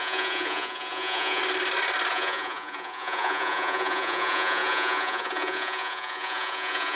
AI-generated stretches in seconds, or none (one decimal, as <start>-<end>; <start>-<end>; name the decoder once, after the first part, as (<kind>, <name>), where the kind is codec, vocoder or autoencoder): 0.0-1.4 (vocoder, Vocos); 2.1-7.0